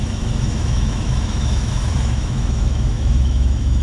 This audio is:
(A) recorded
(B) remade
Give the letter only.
B